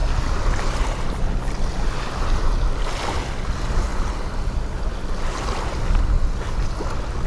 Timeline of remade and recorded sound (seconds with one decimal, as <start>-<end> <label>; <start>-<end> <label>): 0.0-7.3 recorded